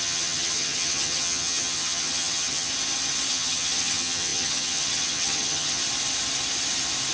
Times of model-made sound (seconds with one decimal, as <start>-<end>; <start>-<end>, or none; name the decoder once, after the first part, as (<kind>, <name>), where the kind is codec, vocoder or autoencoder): 0.0-2.7 (vocoder, HiFi-GAN); 3.3-5.8